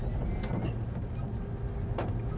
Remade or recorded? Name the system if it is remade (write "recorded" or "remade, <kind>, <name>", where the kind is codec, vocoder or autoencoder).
recorded